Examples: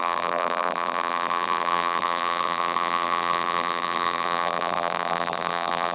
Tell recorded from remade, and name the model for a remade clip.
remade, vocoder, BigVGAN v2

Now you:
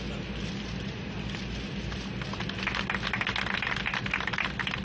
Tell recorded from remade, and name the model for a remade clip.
recorded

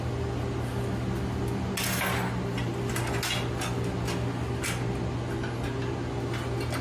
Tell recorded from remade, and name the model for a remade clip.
recorded